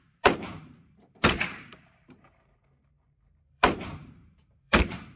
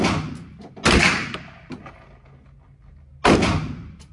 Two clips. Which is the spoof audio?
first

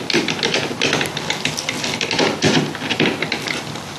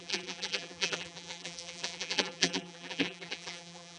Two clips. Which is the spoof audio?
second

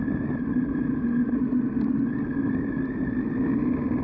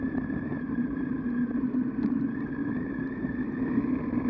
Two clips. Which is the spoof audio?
second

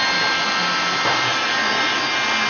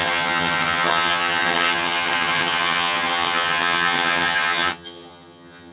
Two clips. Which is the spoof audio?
second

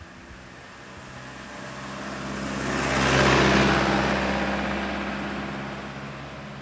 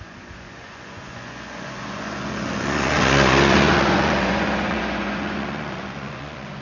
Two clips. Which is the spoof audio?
second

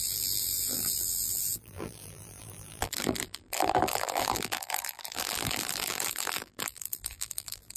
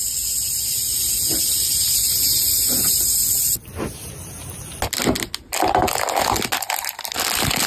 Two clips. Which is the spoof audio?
first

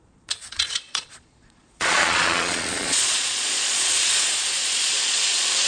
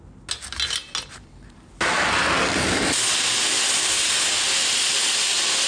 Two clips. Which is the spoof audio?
first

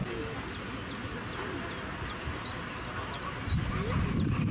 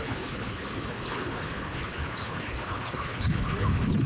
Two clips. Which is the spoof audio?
second